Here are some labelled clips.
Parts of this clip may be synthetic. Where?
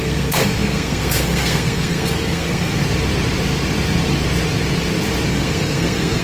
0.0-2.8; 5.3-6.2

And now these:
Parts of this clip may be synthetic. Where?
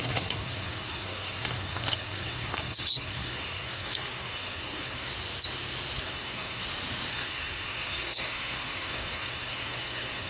0.0-5.1; 6.0-6.6; 7.1-10.3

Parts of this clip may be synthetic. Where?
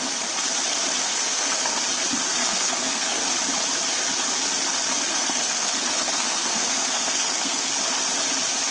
1.0-1.8; 2.4-3.2; 5.1-7.7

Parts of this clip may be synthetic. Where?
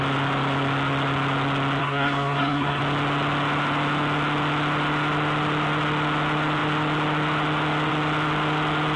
1.8-2.8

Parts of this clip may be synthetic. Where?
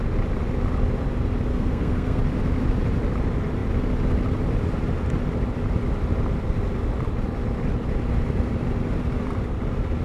1.5-2.2